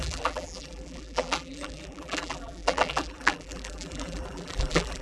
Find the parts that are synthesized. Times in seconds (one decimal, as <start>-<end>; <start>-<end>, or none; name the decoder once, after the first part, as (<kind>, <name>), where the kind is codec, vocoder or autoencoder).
0.0-5.0 (vocoder, BigVGAN v2)